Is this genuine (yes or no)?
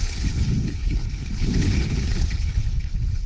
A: no